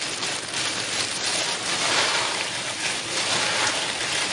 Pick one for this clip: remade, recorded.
remade